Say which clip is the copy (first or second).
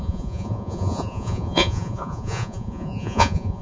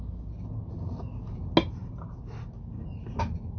first